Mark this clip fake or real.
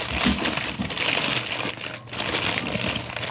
real